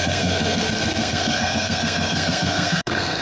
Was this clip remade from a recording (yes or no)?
yes